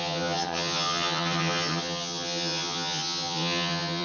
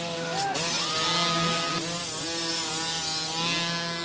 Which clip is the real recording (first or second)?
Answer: second